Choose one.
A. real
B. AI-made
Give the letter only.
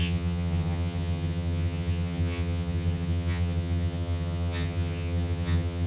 B